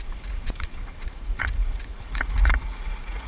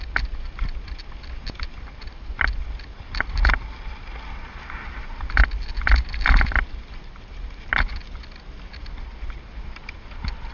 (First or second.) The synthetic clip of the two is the first